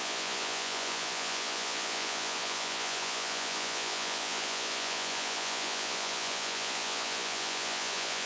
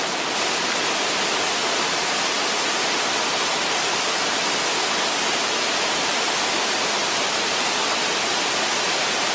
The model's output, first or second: first